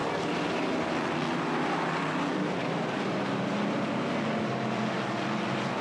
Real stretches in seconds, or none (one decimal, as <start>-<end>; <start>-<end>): 0.0-5.8